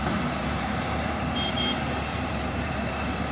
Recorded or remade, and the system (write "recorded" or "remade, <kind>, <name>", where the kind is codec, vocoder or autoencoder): remade, vocoder, BigVGAN v2